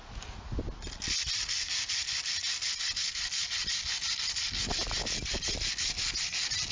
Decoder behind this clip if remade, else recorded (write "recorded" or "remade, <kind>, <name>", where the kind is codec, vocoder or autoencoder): recorded